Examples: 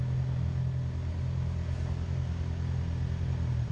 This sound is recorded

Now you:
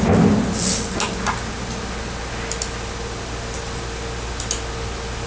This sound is recorded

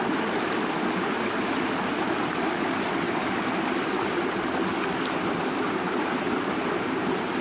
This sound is recorded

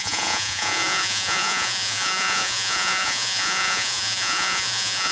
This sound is remade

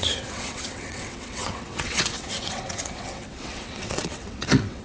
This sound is remade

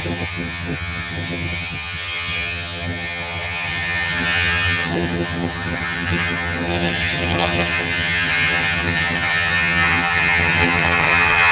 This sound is remade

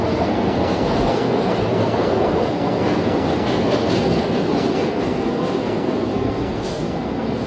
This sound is remade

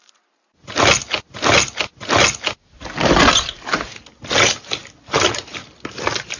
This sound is recorded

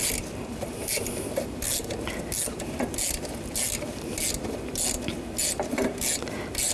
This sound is recorded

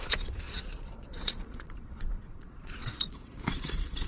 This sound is remade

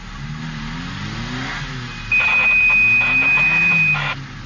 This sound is recorded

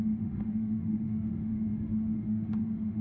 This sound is remade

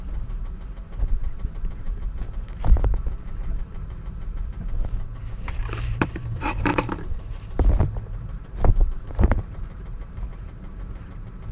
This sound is remade